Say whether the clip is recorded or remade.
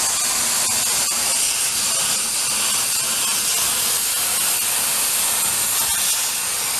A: recorded